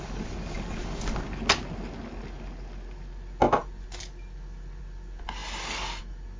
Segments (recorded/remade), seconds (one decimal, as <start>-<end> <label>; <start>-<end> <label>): 0.0-6.4 recorded